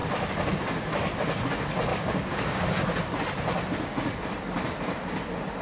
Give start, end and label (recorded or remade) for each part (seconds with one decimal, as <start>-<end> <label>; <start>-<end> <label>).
0.0-1.9 recorded; 1.9-2.6 remade; 2.6-5.6 recorded